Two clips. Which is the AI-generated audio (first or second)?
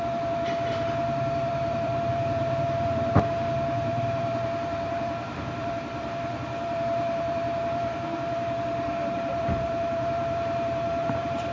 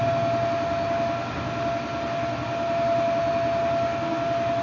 first